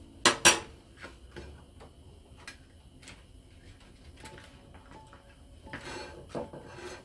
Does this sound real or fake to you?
real